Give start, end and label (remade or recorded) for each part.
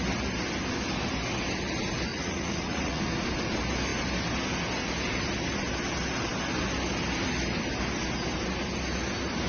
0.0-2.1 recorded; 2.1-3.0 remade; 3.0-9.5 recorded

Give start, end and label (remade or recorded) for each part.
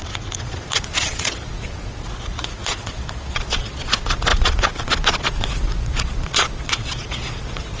0.0-7.8 remade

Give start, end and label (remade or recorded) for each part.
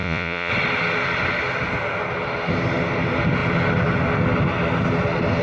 0.0-0.5 remade; 0.5-5.4 recorded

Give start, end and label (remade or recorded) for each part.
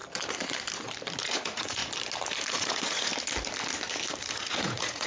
0.0-1.2 recorded; 1.2-1.8 remade; 1.8-2.5 recorded; 2.5-3.1 remade; 3.1-4.2 recorded; 4.2-5.1 remade